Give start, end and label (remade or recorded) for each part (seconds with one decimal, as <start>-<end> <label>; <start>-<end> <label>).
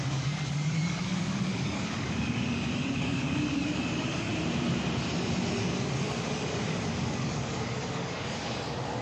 0.0-4.3 remade; 4.3-5.6 recorded; 5.6-9.0 remade